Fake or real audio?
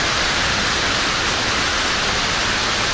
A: real